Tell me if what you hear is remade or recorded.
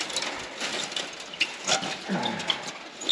recorded